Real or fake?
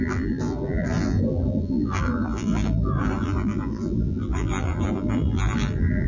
fake